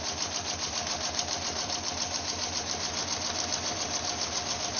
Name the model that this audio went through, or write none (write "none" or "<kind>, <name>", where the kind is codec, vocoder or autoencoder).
vocoder, BigVGAN v2